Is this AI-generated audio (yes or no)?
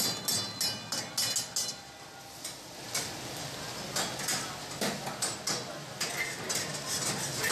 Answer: no